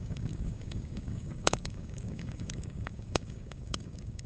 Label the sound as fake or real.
fake